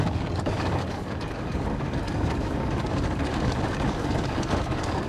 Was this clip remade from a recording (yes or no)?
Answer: yes